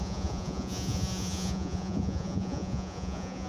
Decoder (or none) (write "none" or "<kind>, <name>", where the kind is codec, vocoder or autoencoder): vocoder, Vocos